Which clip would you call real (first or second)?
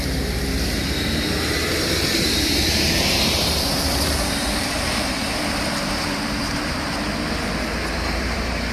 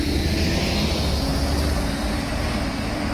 second